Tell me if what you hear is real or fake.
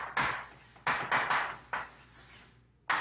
real